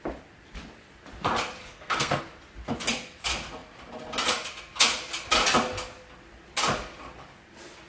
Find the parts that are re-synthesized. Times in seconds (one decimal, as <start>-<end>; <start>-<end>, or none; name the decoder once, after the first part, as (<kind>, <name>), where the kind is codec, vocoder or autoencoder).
1.6-2.2 (codec, SNAC)